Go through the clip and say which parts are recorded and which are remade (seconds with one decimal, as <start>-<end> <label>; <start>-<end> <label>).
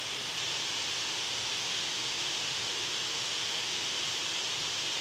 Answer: 0.0-1.0 recorded; 1.0-4.0 remade; 4.0-5.0 recorded